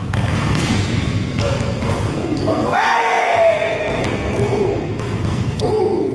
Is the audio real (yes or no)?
no